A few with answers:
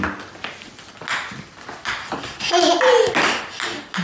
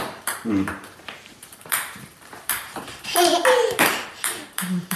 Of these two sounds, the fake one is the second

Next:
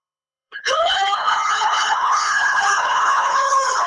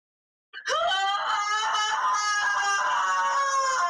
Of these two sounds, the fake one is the first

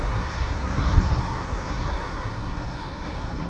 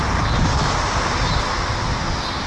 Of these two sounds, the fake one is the first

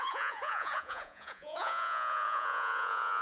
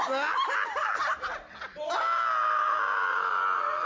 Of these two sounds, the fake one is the first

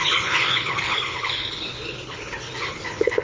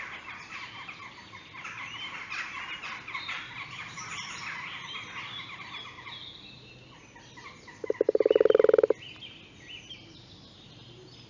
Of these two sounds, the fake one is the first